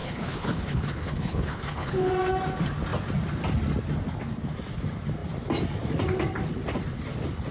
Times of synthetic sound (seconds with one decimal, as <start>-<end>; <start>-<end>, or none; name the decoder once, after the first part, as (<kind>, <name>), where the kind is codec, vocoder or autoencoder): 0.0-2.1 (codec, HILCodec)